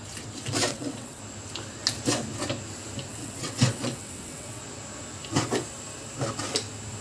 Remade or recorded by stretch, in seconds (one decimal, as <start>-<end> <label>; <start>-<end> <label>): 0.0-0.7 recorded; 0.7-1.2 remade; 1.2-3.1 recorded; 3.1-4.6 remade; 4.6-7.0 recorded